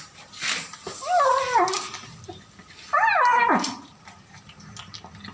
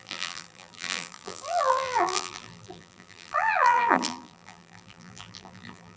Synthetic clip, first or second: second